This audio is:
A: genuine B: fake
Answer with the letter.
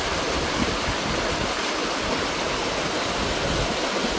A